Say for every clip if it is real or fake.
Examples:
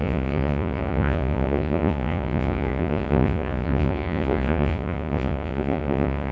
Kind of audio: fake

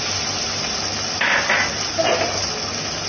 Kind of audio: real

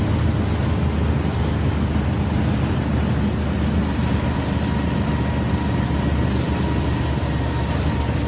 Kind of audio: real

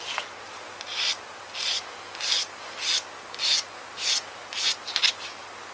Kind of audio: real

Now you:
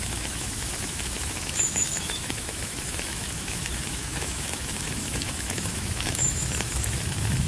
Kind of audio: fake